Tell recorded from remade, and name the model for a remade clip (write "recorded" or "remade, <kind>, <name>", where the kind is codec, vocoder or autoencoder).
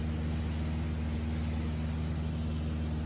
recorded